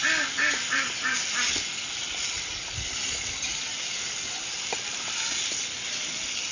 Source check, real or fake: real